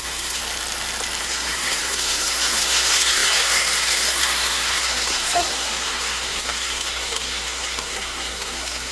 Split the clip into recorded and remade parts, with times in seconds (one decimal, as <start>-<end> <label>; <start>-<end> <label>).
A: 0.0-0.4 remade; 0.4-1.2 recorded; 1.2-8.9 remade